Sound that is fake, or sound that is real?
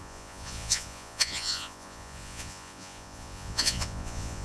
fake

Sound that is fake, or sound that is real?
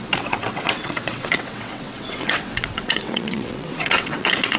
fake